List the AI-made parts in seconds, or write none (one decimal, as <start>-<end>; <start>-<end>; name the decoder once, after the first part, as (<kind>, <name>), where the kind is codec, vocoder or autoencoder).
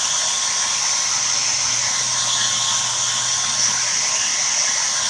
none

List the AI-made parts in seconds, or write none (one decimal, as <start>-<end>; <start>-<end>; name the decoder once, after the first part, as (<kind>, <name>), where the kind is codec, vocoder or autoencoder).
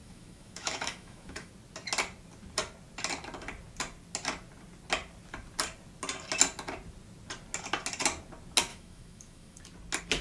0.0-1.5 (autoencoder, DAC-VAE); 8.7-9.6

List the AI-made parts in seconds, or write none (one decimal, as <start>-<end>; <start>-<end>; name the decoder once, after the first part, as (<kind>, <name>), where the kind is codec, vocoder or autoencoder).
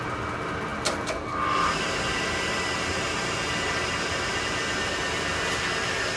none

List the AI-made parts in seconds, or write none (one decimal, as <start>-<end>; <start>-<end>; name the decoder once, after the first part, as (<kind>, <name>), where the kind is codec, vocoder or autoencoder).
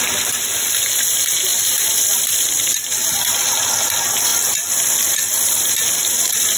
0.0-6.6 (vocoder, BigVGAN v2)